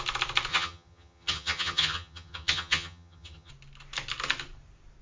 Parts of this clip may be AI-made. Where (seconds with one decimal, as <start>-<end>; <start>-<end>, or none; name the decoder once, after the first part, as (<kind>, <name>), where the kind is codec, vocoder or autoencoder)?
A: 0.5-3.5 (vocoder, HiFi-GAN)